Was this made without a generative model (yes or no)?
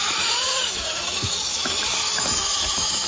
no